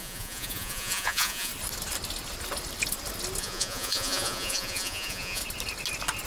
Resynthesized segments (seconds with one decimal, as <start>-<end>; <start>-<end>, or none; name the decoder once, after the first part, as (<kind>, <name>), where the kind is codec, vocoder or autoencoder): 0.0-1.5 (vocoder, Vocos); 3.4-5.4